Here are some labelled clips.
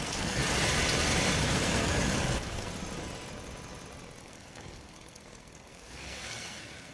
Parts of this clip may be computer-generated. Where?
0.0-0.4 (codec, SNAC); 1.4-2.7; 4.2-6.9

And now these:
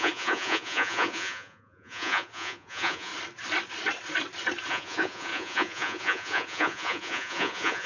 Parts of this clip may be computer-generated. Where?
0.0-3.1 (vocoder, Vocos); 4.7-7.9

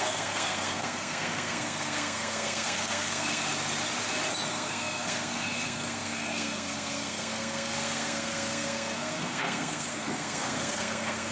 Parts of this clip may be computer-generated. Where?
0.0-3.5 (codec, SNAC); 4.5-11.3